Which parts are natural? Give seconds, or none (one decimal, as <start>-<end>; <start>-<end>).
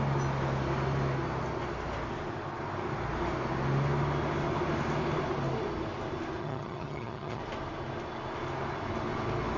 0.0-6.4; 7.4-9.6